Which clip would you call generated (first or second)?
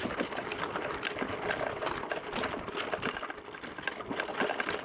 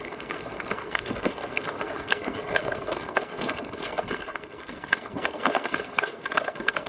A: second